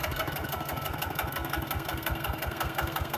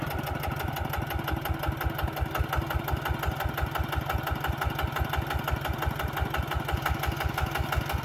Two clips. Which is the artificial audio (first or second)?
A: first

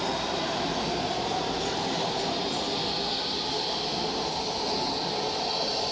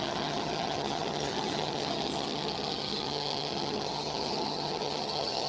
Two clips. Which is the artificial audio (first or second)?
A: second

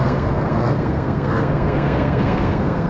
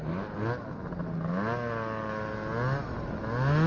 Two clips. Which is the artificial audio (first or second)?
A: first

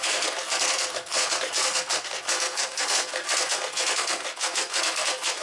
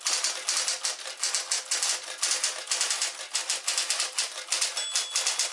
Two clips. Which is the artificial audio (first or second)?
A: first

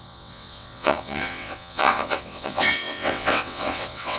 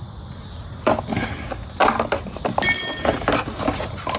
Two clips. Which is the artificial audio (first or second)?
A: first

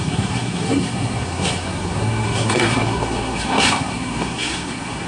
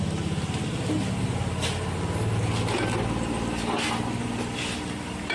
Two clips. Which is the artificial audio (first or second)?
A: first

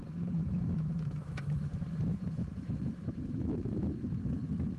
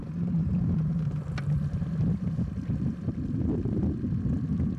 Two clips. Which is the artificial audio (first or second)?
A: first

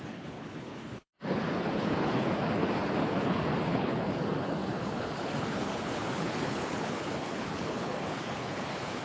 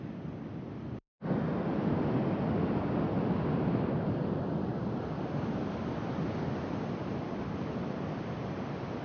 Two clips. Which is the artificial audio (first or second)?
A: first